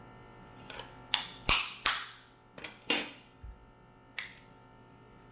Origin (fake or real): real